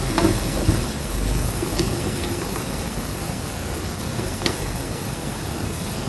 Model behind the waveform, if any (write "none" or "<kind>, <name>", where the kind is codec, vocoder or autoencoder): codec, SNAC